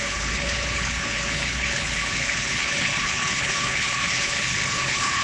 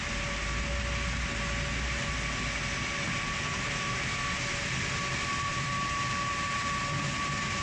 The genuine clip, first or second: second